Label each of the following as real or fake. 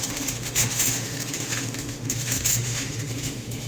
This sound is fake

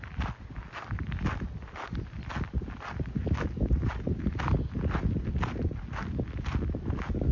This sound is real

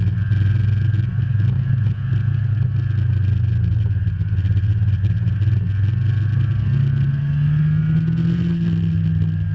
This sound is real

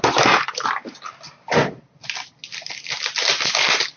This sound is real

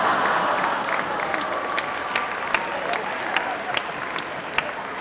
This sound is real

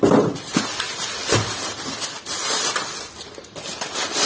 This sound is real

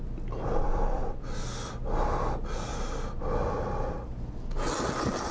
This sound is real